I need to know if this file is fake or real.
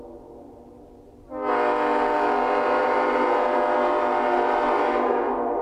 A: real